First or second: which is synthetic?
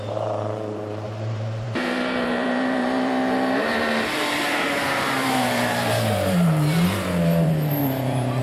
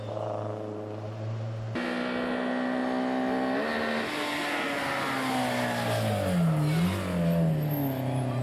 first